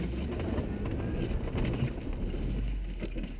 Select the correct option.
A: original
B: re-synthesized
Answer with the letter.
A